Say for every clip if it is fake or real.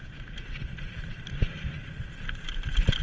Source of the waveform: real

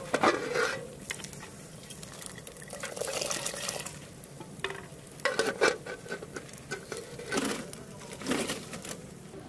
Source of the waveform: real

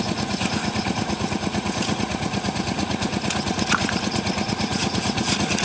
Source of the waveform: fake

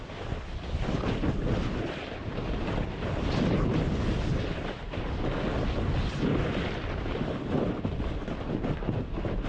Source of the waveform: real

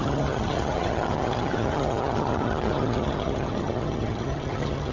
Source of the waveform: fake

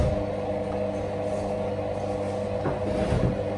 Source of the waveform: real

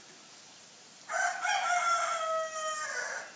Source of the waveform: real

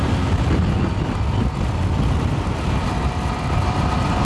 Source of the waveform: real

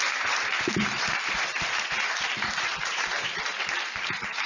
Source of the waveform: fake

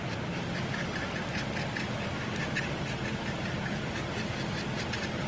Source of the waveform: real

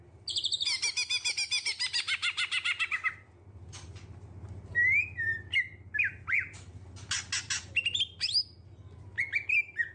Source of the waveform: real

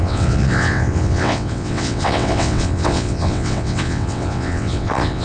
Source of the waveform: fake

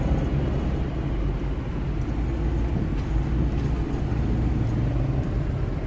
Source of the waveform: real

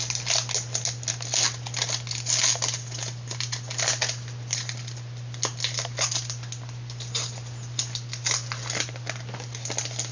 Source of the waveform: real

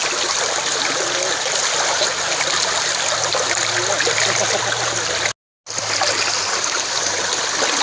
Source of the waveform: real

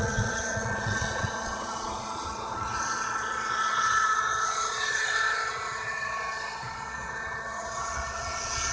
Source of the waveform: fake